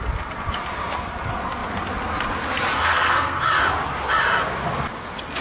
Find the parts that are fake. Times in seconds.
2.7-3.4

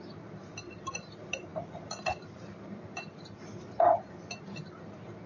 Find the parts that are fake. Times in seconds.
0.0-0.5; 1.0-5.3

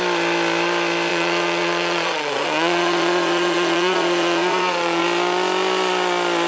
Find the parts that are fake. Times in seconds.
1.1-5.0